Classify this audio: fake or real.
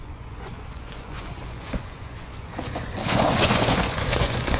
fake